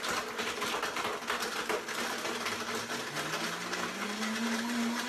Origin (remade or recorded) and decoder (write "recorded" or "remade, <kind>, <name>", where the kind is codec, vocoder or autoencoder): recorded